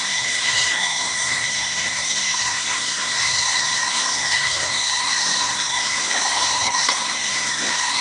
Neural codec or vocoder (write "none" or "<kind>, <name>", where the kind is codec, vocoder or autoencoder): codec, SNAC